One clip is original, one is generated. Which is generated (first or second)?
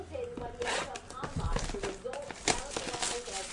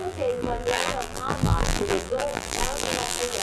second